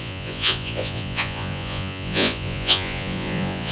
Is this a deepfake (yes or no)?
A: yes